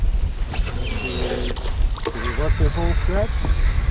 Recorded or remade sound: recorded